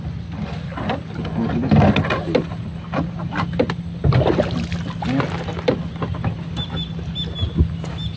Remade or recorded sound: recorded